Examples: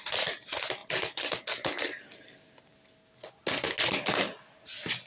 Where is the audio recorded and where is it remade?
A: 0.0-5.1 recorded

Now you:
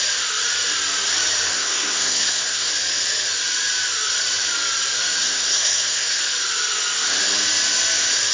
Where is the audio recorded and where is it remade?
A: 0.0-1.5 recorded; 1.5-2.7 remade; 2.7-5.2 recorded; 5.2-6.2 remade; 6.2-8.3 recorded